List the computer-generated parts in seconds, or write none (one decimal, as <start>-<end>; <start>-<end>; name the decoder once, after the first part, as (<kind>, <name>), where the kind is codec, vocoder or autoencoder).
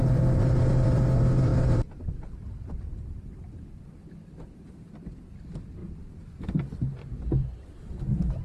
0.0-5.8 (vocoder, BigVGAN v2); 7.2-8.4